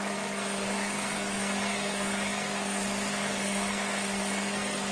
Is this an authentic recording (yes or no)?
no